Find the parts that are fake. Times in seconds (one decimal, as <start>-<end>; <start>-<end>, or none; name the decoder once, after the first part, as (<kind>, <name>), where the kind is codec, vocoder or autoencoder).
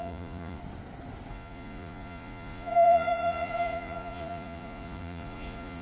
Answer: 0.0-0.6 (vocoder, Vocos); 1.3-5.8